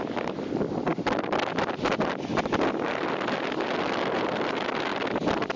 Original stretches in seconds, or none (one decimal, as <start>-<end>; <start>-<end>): 0.0-5.6